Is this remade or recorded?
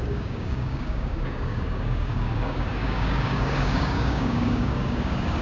remade